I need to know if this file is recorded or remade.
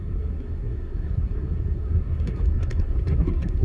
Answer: remade